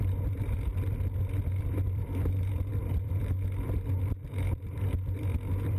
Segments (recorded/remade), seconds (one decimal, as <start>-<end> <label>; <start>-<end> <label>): 0.0-0.7 remade; 0.7-1.5 recorded; 1.5-5.8 remade